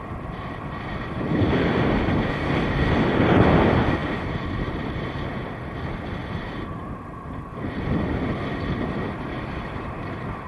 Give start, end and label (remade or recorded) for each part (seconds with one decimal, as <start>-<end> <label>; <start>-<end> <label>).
0.0-10.5 recorded